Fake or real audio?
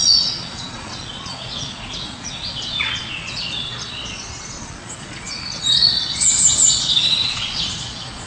fake